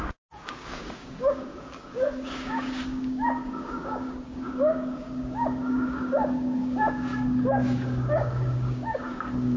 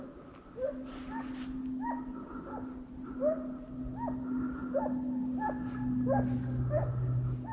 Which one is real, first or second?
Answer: second